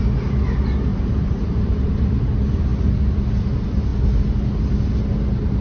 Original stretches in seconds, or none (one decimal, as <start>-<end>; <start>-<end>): 0.0-0.9; 2.2-5.6